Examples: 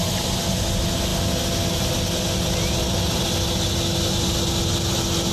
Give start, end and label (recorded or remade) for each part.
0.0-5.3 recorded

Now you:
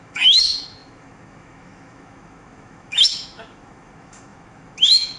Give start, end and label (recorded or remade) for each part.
0.0-5.2 remade

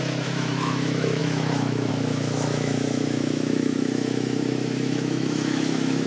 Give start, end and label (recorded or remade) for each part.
0.0-6.1 remade